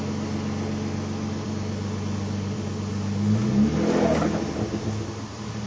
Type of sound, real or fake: real